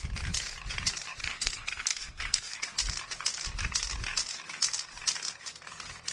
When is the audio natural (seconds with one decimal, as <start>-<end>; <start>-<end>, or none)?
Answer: 0.0-1.2; 2.6-6.1